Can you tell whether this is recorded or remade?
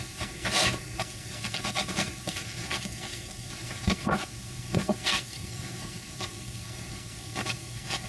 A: remade